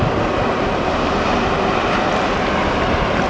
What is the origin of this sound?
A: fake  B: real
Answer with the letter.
B